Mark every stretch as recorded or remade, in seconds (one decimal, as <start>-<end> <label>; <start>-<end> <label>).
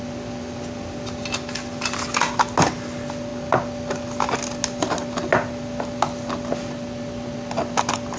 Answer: 0.0-8.2 recorded